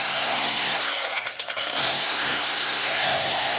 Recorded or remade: remade